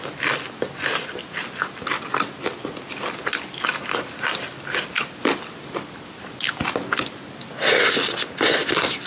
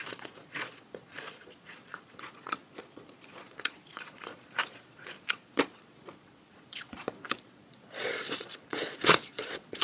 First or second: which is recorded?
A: first